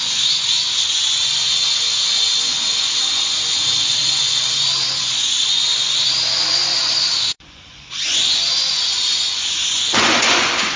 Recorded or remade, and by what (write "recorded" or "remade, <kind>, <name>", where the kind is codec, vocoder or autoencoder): remade, vocoder, Vocos